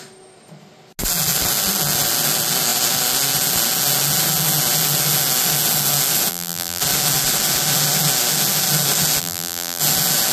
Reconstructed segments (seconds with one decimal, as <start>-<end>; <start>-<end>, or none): 6.3-6.8; 9.2-9.8